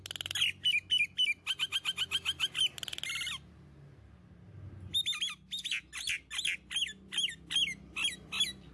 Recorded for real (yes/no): yes